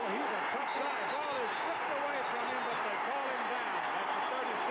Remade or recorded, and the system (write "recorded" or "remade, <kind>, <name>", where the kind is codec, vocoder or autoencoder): recorded